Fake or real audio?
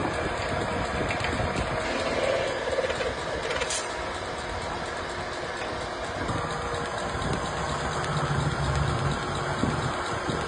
real